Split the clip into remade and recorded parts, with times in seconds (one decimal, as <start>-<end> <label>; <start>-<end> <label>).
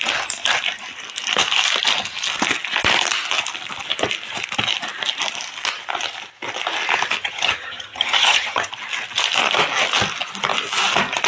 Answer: 0.0-7.2 recorded; 7.2-8.7 remade; 8.7-11.3 recorded